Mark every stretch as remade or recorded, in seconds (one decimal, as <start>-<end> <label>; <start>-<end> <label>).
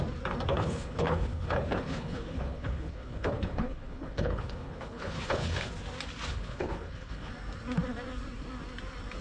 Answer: 0.0-0.5 recorded; 0.5-5.7 remade; 5.7-6.3 recorded; 6.3-7.3 remade; 7.3-9.2 recorded